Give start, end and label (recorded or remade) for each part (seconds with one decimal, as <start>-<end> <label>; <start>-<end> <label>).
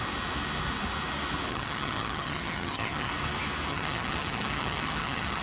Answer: 0.0-1.5 recorded; 1.5-3.1 remade; 3.1-3.7 recorded; 3.7-5.4 remade